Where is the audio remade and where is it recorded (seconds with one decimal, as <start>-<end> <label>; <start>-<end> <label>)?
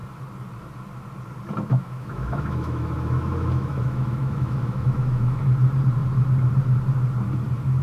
0.0-1.7 recorded; 1.7-5.4 remade; 5.4-7.8 recorded